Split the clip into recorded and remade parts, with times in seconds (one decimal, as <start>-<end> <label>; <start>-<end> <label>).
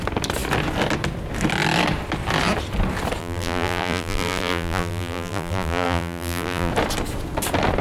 0.0-3.2 recorded; 3.2-6.7 remade; 6.7-7.8 recorded